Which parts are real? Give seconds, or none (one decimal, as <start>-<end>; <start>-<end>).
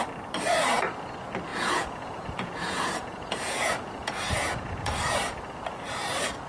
0.0-1.5; 5.4-6.5